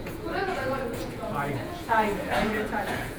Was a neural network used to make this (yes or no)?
yes